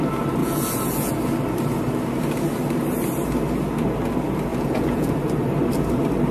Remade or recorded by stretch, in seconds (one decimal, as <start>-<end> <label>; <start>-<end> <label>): 0.0-0.4 recorded; 0.4-1.1 remade; 1.1-4.5 recorded; 4.5-5.1 remade; 5.1-6.3 recorded